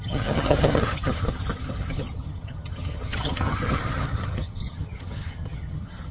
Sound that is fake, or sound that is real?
fake